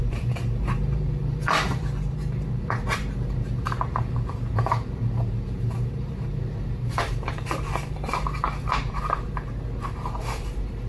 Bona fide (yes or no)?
no